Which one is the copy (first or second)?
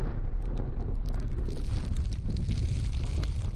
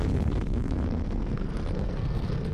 second